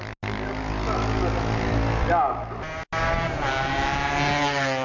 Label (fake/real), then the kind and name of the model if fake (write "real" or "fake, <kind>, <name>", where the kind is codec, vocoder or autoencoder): real